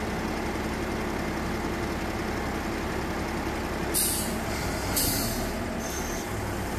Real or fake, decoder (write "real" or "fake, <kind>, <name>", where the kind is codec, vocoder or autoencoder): real